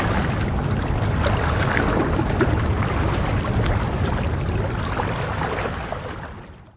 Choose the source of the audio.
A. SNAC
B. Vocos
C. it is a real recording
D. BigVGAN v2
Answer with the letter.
C